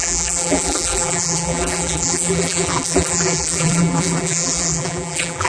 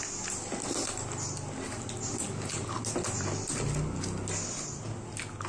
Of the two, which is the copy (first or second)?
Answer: first